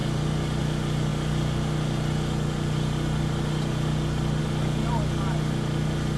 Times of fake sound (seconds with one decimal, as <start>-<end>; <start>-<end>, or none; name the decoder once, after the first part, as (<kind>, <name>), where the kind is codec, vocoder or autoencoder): none